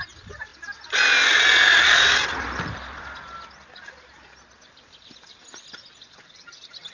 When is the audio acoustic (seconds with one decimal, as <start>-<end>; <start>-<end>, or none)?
0.0-6.9